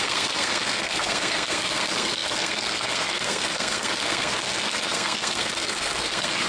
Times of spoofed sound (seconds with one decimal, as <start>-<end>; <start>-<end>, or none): 0.0-6.5